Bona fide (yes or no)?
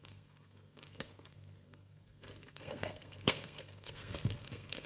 no